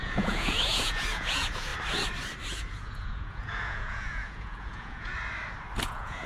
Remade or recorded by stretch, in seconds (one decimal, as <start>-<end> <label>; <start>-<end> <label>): 0.0-1.7 remade; 1.7-2.6 recorded; 2.6-5.1 remade; 5.1-5.8 recorded; 5.8-6.3 remade